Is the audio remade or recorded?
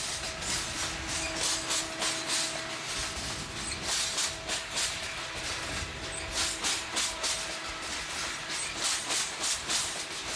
recorded